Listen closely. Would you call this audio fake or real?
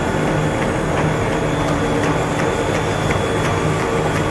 real